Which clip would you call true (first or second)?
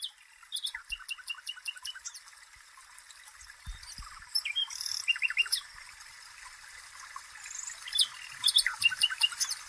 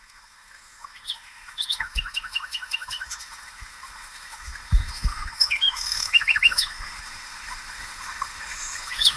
first